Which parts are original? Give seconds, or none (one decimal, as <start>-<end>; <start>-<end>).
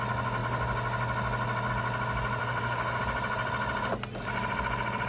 0.0-2.4; 3.0-5.1